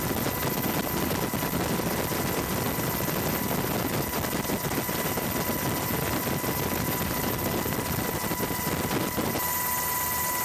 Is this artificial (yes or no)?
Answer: no